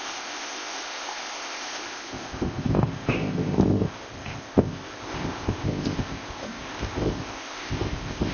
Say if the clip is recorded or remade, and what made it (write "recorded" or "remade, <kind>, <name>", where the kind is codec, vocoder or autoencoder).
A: remade, codec, ZipCodec